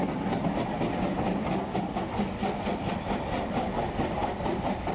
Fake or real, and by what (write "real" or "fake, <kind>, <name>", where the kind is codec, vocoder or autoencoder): real